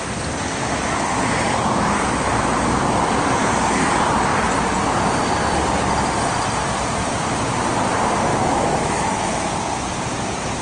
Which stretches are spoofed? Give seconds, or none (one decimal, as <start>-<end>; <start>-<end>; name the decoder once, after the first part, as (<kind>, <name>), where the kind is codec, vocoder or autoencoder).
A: 8.3-9.5 (autoencoder, DAC-VAE)